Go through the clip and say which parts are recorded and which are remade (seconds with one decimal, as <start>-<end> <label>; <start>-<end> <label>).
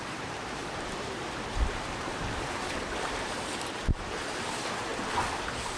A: 0.0-4.9 remade; 4.9-5.8 recorded